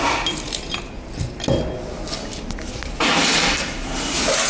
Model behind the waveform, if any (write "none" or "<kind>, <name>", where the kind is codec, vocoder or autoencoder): none